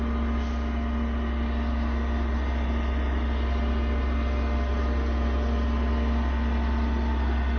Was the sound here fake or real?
real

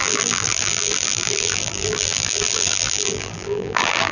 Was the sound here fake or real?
fake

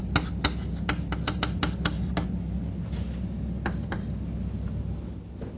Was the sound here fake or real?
real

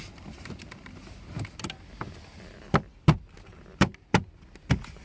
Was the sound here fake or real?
real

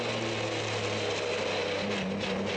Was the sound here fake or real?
real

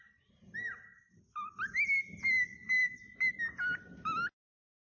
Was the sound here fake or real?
real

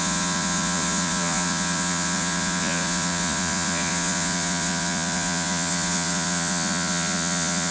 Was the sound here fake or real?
fake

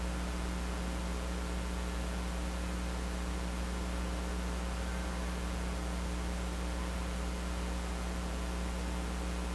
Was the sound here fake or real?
real